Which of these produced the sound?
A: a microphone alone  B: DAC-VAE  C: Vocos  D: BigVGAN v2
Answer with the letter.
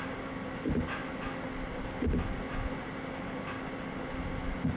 A